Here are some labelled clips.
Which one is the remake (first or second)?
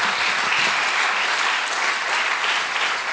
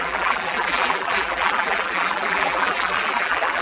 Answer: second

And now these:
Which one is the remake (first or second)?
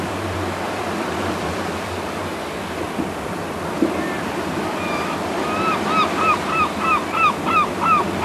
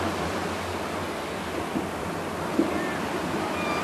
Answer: first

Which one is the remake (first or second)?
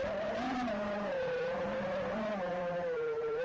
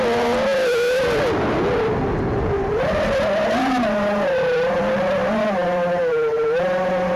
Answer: first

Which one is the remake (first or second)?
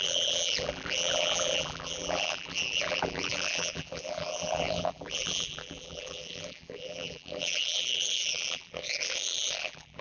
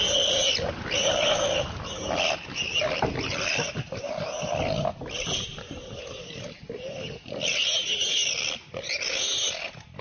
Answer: first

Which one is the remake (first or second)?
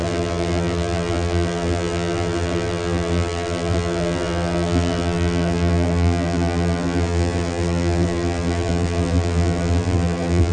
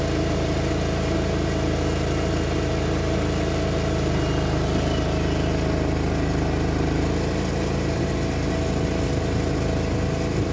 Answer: first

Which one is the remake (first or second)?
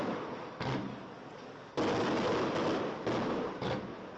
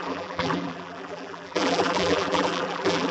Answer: second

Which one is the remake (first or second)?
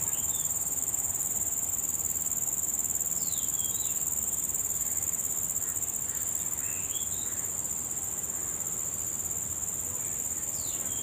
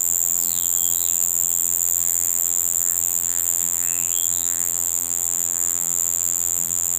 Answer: second